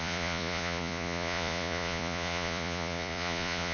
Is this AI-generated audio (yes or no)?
yes